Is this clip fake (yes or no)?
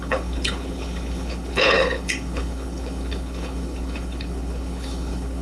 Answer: yes